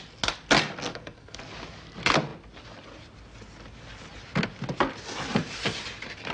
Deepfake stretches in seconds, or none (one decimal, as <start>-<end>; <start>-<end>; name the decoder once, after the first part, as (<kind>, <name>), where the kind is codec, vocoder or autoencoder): 0.9-1.4 (codec, SNAC)